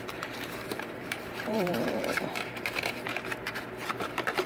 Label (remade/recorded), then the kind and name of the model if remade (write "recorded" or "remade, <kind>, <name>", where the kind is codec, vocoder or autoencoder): remade, vocoder, BigVGAN v2